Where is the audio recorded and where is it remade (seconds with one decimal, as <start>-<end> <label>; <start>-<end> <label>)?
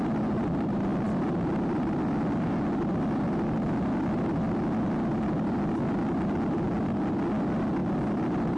0.0-8.6 recorded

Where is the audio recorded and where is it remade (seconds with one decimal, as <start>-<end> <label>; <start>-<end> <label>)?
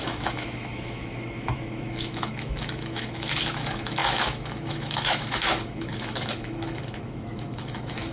0.0-8.1 remade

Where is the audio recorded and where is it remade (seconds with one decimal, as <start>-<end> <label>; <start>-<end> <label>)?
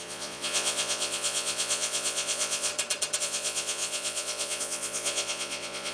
0.0-2.7 remade; 2.7-3.2 recorded; 3.2-5.9 remade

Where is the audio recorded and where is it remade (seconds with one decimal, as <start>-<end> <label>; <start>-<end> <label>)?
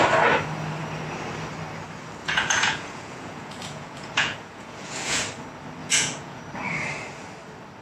0.0-2.2 recorded; 2.2-5.2 remade; 5.2-5.8 recorded; 5.8-6.4 remade; 6.4-7.8 recorded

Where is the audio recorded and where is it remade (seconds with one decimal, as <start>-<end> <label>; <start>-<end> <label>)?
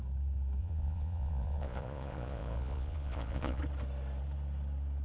0.0-0.6 recorded; 0.6-3.6 remade; 3.6-5.0 recorded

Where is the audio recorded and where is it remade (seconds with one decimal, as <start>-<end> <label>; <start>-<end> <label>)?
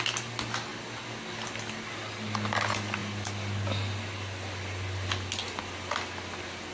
0.0-6.7 recorded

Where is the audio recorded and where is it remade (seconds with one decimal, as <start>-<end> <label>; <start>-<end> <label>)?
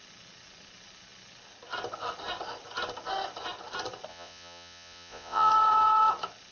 0.0-4.1 recorded; 4.1-5.5 remade; 5.5-6.5 recorded